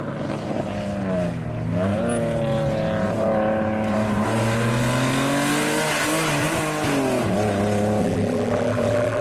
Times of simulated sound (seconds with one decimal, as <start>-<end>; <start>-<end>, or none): 8.0-9.2